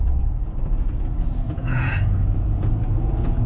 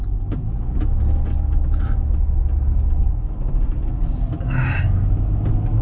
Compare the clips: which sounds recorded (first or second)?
second